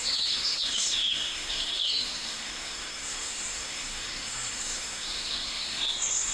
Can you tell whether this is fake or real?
fake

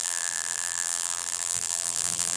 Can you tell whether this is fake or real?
fake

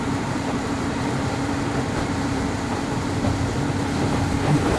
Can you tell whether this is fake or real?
fake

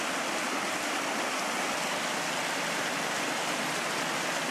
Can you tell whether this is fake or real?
real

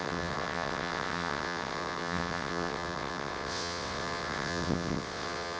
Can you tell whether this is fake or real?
fake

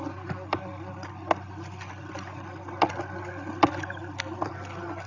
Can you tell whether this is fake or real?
real